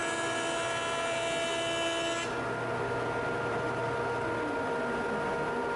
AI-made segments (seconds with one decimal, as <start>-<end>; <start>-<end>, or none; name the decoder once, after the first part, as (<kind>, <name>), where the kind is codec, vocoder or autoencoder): none